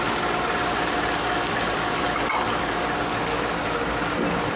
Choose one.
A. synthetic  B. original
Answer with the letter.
B